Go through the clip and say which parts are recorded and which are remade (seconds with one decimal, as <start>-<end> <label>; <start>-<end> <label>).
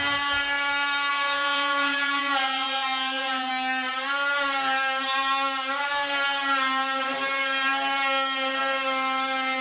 0.0-1.1 recorded; 1.1-3.5 remade; 3.5-9.6 recorded